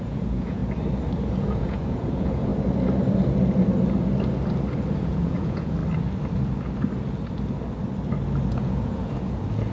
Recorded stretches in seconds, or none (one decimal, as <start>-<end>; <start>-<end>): 0.6-1.3; 2.5-5.0; 5.8-8.5